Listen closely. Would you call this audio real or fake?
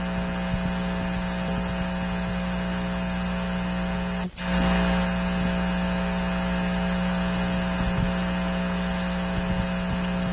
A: real